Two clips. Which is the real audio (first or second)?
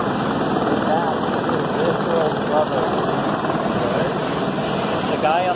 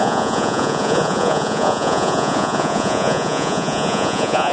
first